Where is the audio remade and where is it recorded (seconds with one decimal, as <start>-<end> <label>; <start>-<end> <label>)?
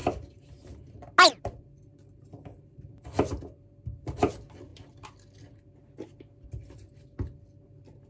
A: 0.0-8.1 recorded